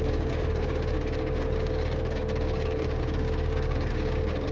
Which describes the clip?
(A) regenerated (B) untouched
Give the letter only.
A